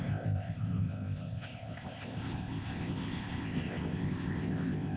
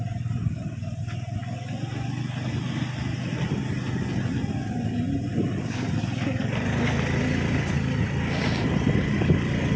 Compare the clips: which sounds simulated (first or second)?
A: first